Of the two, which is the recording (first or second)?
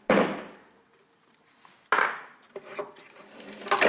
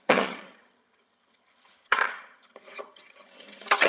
first